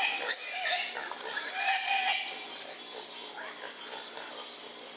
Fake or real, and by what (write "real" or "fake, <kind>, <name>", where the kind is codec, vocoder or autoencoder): real